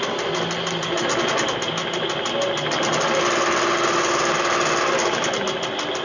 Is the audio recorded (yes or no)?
yes